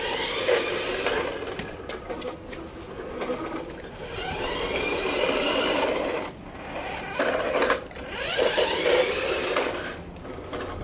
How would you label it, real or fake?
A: real